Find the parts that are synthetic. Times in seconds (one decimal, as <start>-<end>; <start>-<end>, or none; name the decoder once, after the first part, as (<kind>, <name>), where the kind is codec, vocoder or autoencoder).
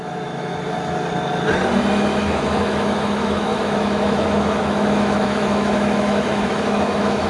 0.0-0.5 (autoencoder, DAC-VAE); 1.9-7.3